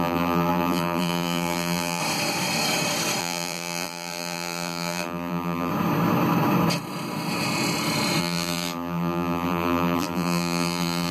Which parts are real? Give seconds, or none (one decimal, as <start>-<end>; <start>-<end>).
2.0-3.2; 5.7-8.2

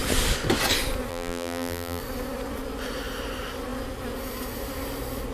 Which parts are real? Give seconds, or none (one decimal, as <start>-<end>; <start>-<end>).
0.0-1.1; 2.0-5.3

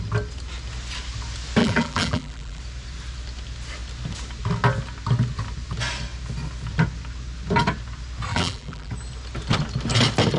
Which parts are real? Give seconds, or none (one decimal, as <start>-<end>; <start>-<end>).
0.0-1.6; 2.6-8.3; 8.9-10.4

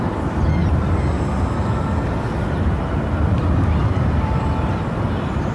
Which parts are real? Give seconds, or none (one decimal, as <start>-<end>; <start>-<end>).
0.6-3.7

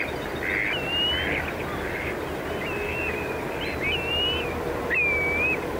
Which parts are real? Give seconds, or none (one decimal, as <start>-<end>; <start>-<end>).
0.0-5.8

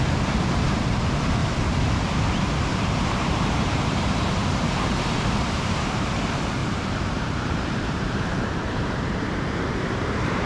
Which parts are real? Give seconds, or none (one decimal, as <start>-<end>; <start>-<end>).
1.4-2.7